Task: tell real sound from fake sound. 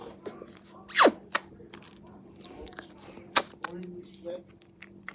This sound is fake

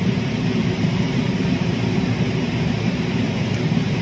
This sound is fake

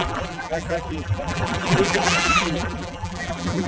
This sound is fake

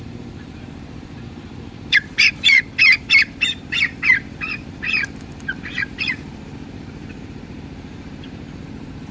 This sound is fake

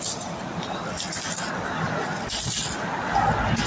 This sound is real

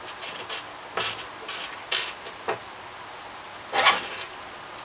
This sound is real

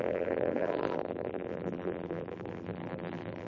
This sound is fake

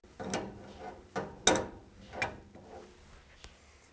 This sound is real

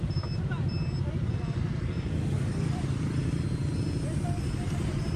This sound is real